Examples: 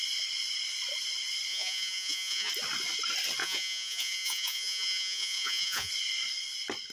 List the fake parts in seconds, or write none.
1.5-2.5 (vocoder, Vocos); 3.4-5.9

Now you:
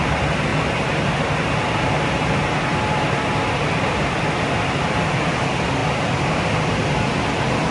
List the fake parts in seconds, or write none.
none

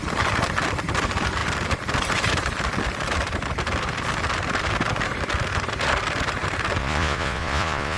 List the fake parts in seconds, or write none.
6.8-8.0 (vocoder, Vocos)

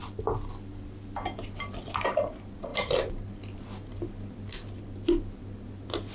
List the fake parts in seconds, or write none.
none